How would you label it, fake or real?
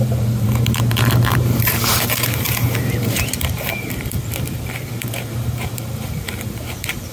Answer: fake